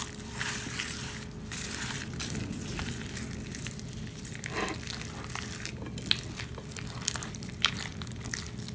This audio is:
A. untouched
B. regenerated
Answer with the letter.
A